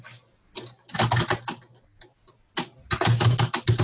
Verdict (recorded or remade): recorded